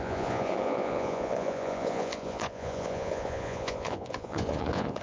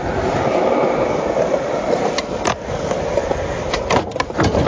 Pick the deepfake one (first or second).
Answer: first